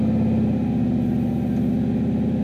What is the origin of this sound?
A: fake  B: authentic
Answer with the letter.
B